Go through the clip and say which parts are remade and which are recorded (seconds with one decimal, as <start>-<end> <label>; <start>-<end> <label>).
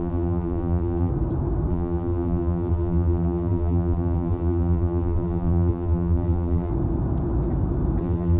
0.0-1.1 remade; 1.1-1.7 recorded; 1.7-6.7 remade; 6.7-8.0 recorded; 8.0-8.4 remade